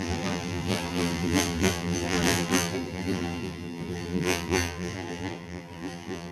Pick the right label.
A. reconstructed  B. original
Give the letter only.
A